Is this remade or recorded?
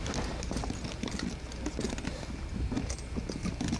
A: recorded